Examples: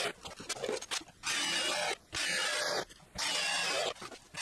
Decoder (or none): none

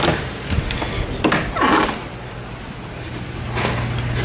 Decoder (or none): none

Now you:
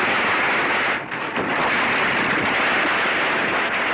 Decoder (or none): none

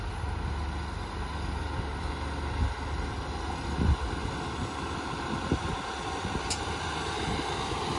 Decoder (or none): none